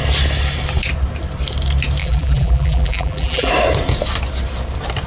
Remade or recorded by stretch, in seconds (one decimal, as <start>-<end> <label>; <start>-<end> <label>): 0.0-2.0 recorded; 2.0-3.5 remade; 3.5-5.1 recorded